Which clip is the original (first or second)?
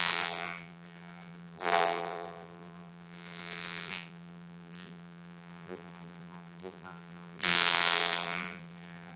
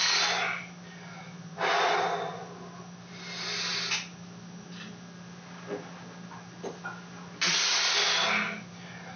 second